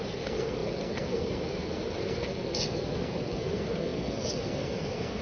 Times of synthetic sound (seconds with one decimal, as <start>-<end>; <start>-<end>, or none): 0.0-5.2